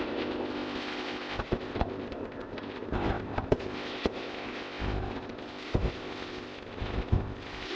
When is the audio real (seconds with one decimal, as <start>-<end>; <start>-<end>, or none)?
none